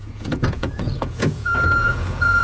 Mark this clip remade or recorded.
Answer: remade